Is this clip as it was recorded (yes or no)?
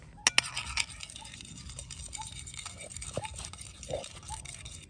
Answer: yes